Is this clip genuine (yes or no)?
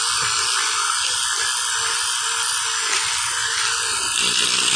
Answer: yes